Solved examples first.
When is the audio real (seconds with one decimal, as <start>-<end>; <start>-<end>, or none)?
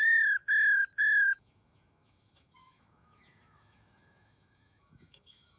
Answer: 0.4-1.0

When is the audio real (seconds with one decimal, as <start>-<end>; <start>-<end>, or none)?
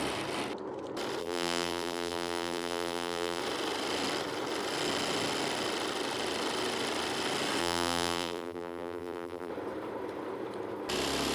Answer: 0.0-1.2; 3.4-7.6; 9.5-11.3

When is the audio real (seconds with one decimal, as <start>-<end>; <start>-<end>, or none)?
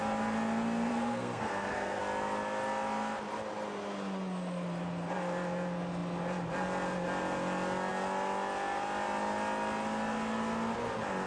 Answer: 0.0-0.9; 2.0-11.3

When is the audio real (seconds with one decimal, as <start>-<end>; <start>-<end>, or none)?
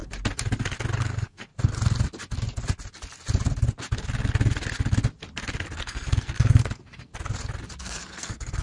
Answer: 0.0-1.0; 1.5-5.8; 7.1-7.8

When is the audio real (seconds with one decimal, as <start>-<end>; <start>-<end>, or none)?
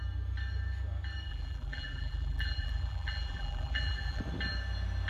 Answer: 0.0-1.3; 4.2-5.1